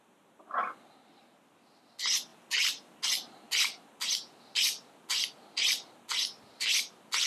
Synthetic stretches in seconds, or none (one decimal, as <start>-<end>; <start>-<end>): none